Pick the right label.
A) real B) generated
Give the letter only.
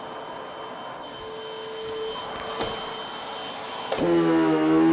A